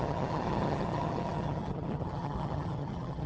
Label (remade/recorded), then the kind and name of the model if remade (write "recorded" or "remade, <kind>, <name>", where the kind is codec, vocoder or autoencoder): remade, vocoder, HiFi-GAN